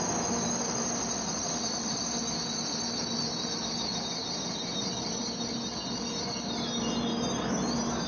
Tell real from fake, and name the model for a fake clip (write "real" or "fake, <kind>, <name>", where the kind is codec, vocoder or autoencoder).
real